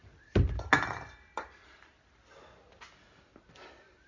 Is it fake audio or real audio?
real